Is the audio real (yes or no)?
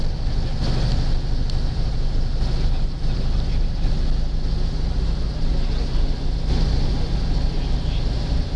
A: yes